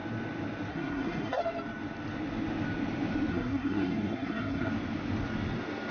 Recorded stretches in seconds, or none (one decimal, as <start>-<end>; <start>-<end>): 0.0-0.7; 1.4-3.3; 4.7-5.9